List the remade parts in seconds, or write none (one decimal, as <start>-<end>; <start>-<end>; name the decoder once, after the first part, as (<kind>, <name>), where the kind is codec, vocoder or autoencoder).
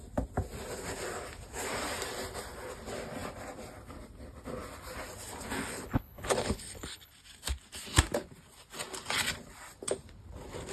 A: 5.6-7.1 (codec, HILCodec)